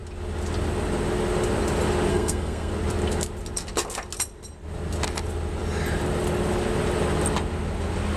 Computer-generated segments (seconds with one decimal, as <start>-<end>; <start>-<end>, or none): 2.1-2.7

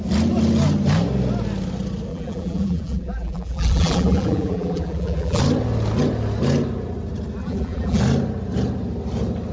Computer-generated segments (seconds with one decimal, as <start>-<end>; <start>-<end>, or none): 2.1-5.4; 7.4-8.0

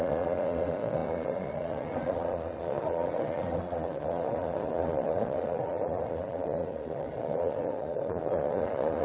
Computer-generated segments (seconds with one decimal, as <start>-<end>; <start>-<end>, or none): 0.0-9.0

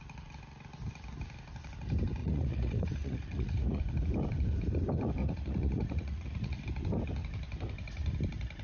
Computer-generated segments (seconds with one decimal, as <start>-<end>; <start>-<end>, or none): 2.2-3.8; 5.2-6.6

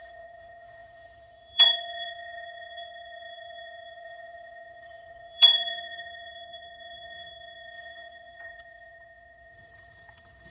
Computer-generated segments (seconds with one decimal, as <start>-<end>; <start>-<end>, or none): 0.0-10.5

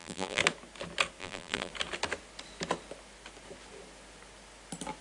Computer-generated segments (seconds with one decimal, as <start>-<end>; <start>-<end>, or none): 0.0-0.4; 1.2-1.7

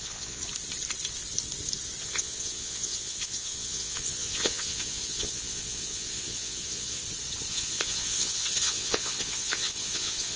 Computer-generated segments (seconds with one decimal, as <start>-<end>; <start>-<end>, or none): 0.0-0.4; 2.0-7.0; 7.5-10.4